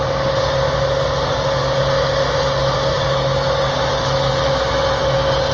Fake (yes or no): no